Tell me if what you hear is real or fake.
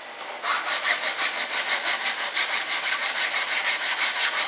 real